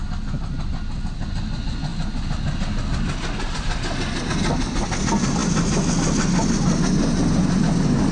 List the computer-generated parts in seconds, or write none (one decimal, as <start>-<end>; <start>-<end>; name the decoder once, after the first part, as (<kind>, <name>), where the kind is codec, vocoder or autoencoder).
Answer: none